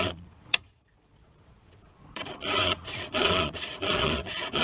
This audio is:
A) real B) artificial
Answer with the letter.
B